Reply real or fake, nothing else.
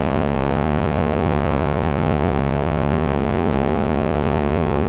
fake